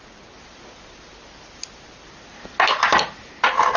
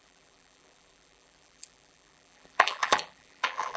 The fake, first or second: second